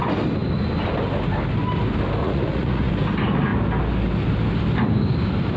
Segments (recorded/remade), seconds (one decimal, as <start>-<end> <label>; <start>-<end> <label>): 0.0-2.2 recorded; 2.2-2.9 remade; 2.9-5.6 recorded